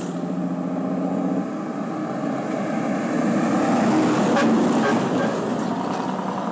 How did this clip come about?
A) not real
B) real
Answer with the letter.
B